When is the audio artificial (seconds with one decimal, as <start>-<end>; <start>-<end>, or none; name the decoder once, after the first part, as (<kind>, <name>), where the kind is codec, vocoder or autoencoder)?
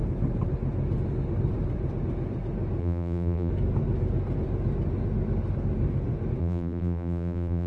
2.8-3.5 (vocoder, BigVGAN v2); 6.4-7.7